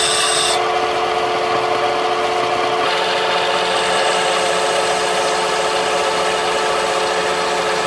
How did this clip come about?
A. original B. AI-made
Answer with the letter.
A